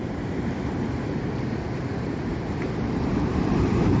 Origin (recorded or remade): remade